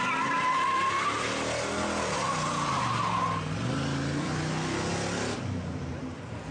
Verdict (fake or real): real